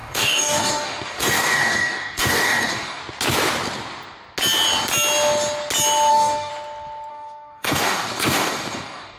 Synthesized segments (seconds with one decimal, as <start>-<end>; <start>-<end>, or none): 0.0-3.0; 6.1-6.5; 7.1-9.2